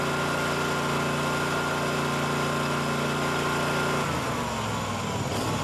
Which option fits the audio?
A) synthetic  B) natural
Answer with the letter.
B